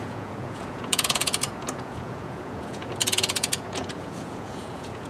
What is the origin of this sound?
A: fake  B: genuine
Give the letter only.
A